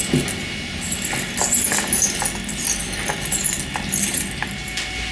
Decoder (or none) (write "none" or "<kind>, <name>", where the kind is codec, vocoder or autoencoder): none